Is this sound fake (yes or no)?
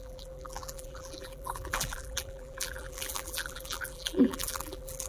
yes